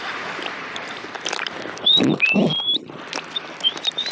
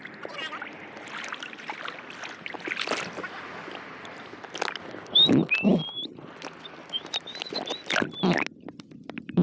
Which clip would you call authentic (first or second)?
second